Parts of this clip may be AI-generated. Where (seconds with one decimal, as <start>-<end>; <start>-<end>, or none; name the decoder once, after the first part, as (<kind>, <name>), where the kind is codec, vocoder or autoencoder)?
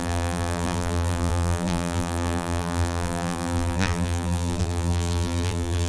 0.0-5.9 (vocoder, BigVGAN v2)